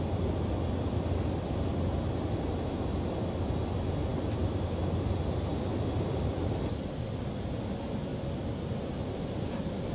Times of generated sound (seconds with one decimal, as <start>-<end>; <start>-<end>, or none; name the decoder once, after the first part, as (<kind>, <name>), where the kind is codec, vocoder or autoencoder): none

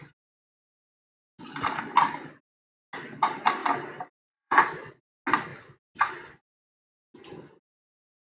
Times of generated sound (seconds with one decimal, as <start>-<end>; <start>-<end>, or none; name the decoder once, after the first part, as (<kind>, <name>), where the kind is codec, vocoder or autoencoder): 3.6-4.9 (vocoder, BigVGAN v2)

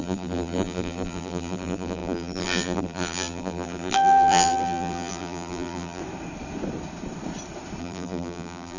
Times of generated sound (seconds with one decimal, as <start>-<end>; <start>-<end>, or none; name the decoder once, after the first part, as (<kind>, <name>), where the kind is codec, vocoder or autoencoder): 0.0-6.0 (vocoder, BigVGAN v2); 7.8-8.8

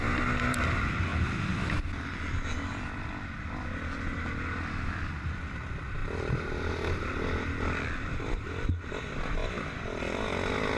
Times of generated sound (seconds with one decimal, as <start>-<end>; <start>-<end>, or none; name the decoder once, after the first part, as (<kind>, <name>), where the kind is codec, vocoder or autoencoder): 6.0-6.5 (vocoder, BigVGAN v2)